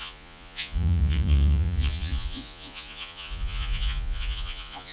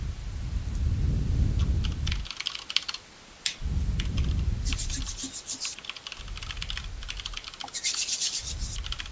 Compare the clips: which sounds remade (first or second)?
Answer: first